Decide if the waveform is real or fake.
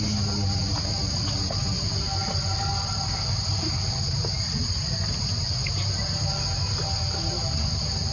real